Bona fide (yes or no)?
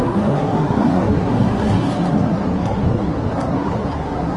no